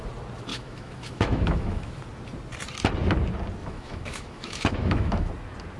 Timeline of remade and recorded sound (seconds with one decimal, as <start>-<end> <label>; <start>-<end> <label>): 0.0-0.5 recorded; 0.5-2.0 remade; 2.0-3.6 recorded; 3.6-5.3 remade; 5.3-5.8 recorded